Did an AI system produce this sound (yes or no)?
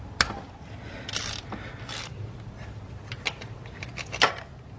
no